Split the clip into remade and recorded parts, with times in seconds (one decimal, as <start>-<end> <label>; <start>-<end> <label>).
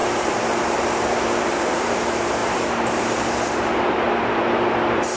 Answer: 0.0-5.2 remade